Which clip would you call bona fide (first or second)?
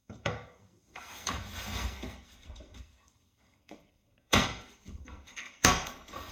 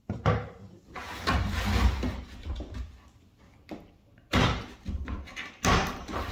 second